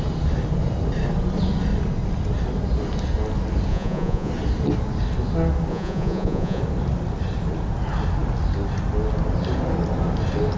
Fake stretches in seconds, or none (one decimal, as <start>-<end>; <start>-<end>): 3.7-4.3; 5.7-6.6

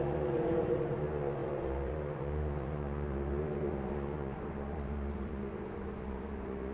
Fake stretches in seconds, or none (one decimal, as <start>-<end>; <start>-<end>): 0.0-6.7

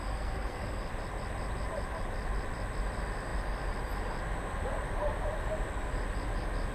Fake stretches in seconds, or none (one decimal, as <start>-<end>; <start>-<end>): 0.0-0.8

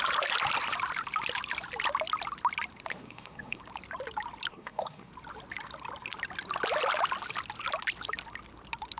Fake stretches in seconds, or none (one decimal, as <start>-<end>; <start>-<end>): 2.9-3.6; 4.5-5.1

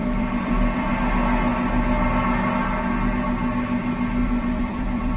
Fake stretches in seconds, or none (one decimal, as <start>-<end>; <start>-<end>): 0.0-0.9; 4.2-5.2

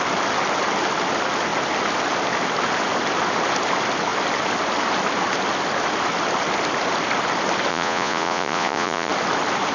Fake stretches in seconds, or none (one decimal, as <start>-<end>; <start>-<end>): 7.7-9.1